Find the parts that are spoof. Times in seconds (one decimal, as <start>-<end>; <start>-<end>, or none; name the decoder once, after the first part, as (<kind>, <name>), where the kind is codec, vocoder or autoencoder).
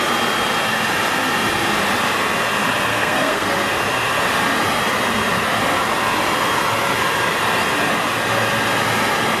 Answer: 2.9-3.5 (codec, SNAC)